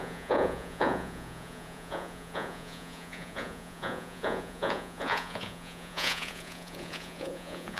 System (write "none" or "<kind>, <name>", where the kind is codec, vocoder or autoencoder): vocoder, Vocos